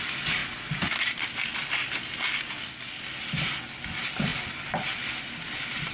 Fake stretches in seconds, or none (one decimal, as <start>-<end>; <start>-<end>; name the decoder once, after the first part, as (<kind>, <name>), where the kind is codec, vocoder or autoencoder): 0.0-0.4 (vocoder, BigVGAN v2); 2.8-4.3; 5.1-5.9